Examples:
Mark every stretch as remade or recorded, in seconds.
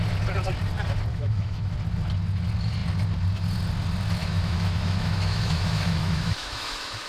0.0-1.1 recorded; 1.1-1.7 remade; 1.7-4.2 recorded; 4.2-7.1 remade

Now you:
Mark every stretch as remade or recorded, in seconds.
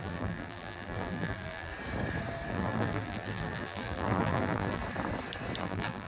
0.0-1.7 remade; 1.7-2.5 recorded; 2.5-4.8 remade; 4.8-5.6 recorded; 5.6-6.1 remade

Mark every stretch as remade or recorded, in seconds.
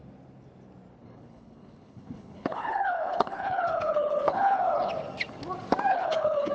0.0-1.0 recorded; 1.0-4.9 remade; 4.9-5.9 recorded; 5.9-6.5 remade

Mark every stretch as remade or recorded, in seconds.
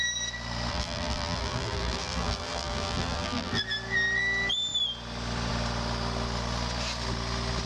0.0-0.7 recorded; 0.7-3.6 remade; 3.6-7.7 recorded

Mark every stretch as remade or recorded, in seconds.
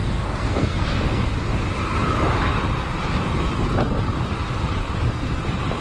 0.0-1.2 remade; 1.2-5.8 recorded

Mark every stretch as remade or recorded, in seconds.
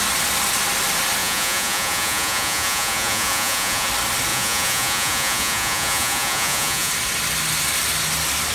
0.0-1.2 recorded; 1.2-3.9 remade; 3.9-4.3 recorded; 4.3-6.9 remade; 6.9-8.5 recorded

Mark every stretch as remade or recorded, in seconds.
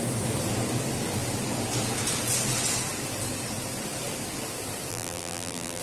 0.0-4.9 recorded; 4.9-5.8 remade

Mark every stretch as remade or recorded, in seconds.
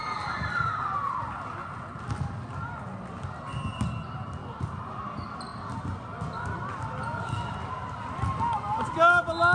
0.0-4.4 recorded; 4.4-4.9 remade; 4.9-9.5 recorded